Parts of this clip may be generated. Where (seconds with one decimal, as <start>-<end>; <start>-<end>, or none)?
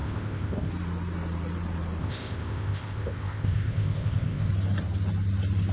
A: 0.0-0.7; 2.0-4.5